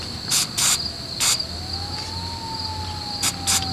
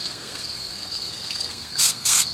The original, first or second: first